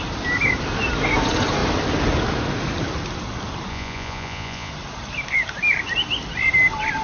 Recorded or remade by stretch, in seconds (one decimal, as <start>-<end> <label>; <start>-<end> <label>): 0.0-3.7 recorded; 3.7-4.7 remade; 4.7-7.0 recorded